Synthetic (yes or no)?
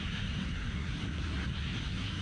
yes